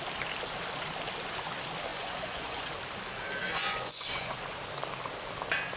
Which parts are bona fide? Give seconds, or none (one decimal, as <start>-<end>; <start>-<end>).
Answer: 0.0-1.9; 2.7-3.4; 4.4-5.8